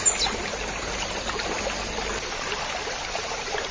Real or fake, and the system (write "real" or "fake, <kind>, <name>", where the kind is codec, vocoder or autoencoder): real